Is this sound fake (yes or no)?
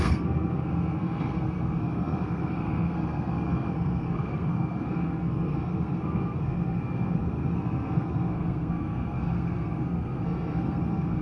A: yes